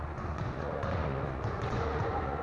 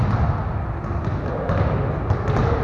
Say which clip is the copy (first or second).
first